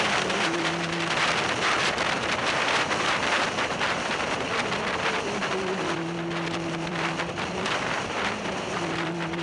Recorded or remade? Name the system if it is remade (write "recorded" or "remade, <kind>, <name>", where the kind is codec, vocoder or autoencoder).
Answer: remade, vocoder, BigVGAN v2